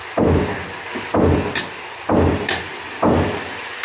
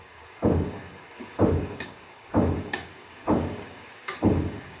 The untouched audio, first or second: first